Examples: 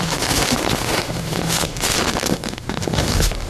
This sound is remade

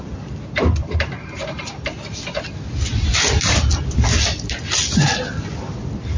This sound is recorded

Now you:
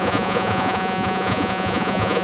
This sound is remade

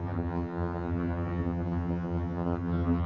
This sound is remade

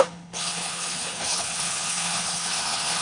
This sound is remade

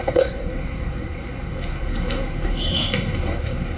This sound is remade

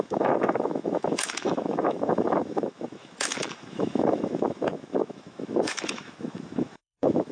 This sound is remade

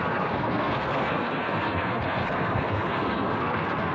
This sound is remade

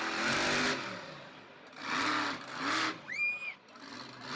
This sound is recorded